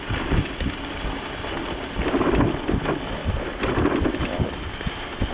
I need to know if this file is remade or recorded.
recorded